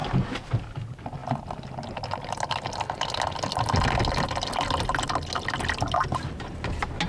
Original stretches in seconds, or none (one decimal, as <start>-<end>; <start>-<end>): 0.0-7.1